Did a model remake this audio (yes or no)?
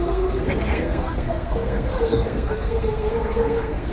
yes